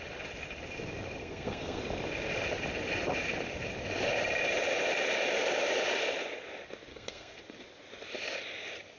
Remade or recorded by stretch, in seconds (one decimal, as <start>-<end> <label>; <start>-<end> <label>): 0.0-1.2 recorded; 1.2-1.8 remade; 1.8-6.9 recorded; 6.9-7.4 remade; 7.4-9.0 recorded